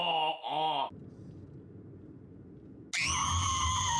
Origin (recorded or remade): recorded